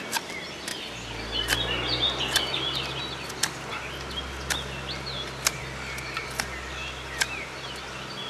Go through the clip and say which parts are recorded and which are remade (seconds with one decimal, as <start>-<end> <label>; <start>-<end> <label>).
0.0-8.3 recorded